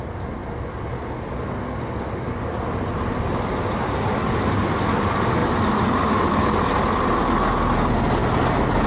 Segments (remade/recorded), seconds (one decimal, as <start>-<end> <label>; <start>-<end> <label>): 0.0-8.9 recorded